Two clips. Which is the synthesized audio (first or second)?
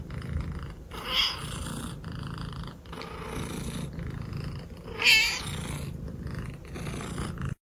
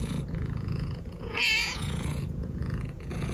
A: second